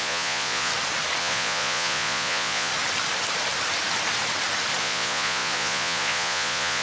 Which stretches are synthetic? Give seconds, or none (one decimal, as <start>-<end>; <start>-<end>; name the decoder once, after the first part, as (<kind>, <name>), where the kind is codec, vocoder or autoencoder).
0.0-0.7 (vocoder, Vocos); 1.2-2.7; 4.8-6.8